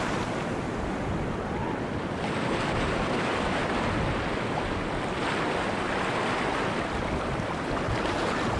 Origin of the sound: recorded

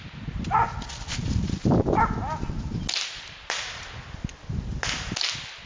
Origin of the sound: recorded